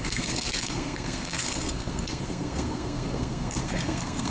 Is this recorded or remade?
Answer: remade